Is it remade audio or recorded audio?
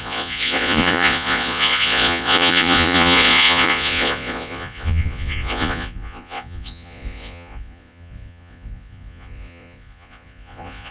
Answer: remade